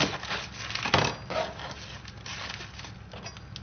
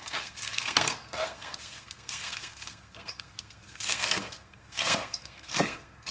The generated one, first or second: second